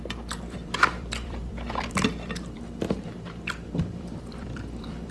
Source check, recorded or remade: remade